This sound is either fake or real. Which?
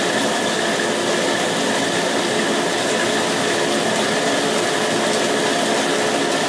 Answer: real